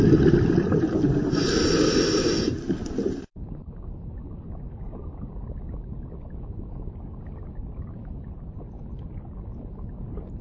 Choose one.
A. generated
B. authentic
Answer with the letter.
B